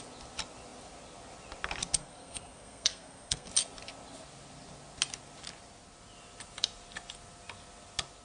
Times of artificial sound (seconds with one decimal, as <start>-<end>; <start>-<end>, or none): 2.0-3.5